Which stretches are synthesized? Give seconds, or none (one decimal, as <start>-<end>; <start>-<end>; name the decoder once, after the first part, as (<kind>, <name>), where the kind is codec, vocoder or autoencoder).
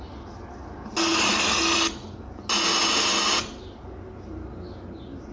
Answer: none